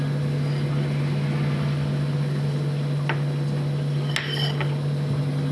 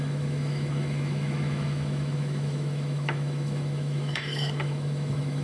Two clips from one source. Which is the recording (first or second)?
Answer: first